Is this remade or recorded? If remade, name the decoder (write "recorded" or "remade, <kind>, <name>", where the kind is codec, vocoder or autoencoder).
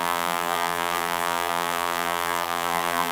remade, vocoder, BigVGAN v2